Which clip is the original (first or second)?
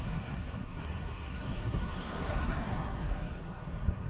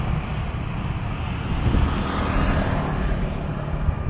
second